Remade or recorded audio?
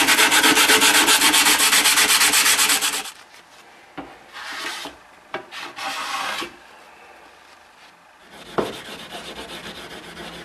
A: recorded